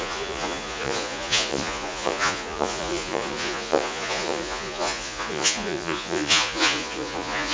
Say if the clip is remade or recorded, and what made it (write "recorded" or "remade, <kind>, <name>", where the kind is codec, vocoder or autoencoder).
remade, vocoder, Vocos